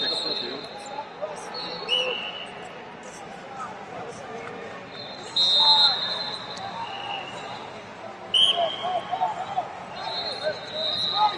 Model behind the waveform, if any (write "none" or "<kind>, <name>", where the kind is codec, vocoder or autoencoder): none